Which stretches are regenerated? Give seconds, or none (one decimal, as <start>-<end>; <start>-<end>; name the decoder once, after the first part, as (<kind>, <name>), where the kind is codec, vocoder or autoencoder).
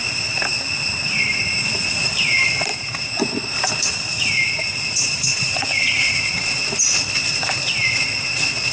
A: 0.0-0.5 (vocoder, BigVGAN v2); 1.2-8.7